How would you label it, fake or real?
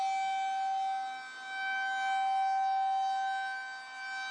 real